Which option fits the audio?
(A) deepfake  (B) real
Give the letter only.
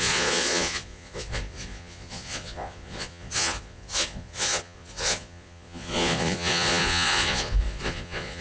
A